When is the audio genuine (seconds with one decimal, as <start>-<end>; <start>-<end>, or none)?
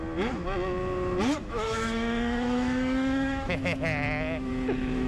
0.0-1.4; 4.5-5.1